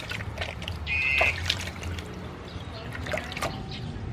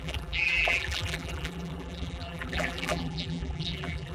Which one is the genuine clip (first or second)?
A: first